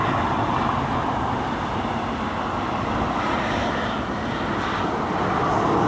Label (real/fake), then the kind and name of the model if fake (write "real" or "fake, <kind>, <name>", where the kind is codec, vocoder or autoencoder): real